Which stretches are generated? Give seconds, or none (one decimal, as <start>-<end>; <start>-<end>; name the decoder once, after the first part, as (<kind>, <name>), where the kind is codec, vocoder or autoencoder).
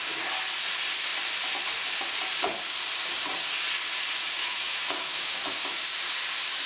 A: 4.4-5.8 (autoencoder, DAC-VAE)